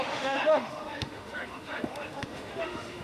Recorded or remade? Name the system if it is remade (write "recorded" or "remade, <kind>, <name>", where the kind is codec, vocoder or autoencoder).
remade, autoencoder, DAC-VAE